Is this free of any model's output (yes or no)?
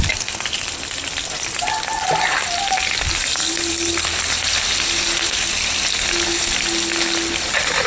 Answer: yes